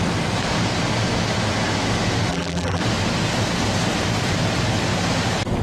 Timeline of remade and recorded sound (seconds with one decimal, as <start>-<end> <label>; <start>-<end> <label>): 0.0-2.3 recorded; 2.3-2.8 remade; 2.8-5.6 recorded